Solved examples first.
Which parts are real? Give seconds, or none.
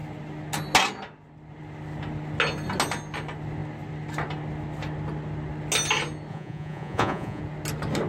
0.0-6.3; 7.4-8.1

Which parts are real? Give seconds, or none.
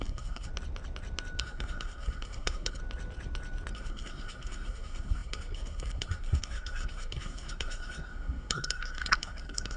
0.5-1.4; 2.8-3.7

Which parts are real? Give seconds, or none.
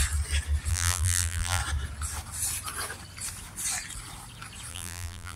0.0-0.7; 1.6-4.7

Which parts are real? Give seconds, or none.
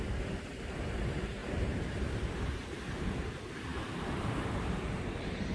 none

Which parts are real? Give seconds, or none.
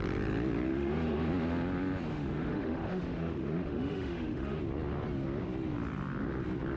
0.0-0.7; 1.3-2.1; 4.6-6.8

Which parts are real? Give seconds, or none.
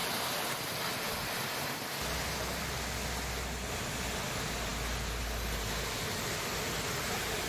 0.0-7.5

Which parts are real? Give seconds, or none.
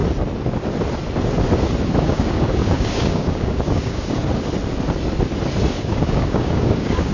0.0-2.0; 4.2-5.7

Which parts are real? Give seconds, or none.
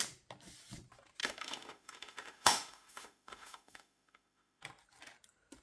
0.0-1.2; 4.6-5.6